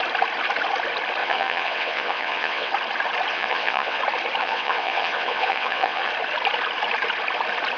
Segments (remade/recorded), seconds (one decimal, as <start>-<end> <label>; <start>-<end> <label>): 0.0-1.2 recorded; 1.2-2.7 remade; 2.7-3.3 recorded; 3.3-4.0 remade; 4.0-4.4 recorded; 4.4-6.1 remade; 6.1-7.8 recorded